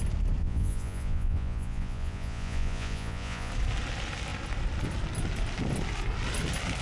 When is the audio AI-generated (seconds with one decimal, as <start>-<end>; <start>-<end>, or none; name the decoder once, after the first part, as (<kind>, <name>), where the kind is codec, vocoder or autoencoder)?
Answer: 0.4-3.5 (vocoder, Vocos)